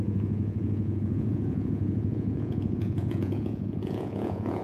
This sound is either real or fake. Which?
fake